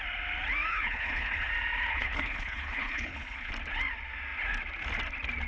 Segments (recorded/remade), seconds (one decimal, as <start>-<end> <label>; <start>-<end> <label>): 0.0-0.7 recorded; 0.7-1.5 remade; 1.5-1.9 recorded; 1.9-3.5 remade; 3.5-5.5 recorded